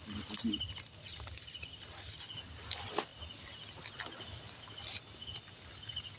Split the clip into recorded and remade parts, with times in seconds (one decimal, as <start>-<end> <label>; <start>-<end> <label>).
0.0-6.2 recorded